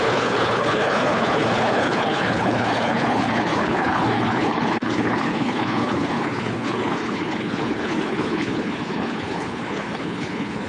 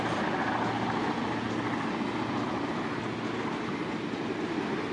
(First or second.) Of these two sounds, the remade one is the first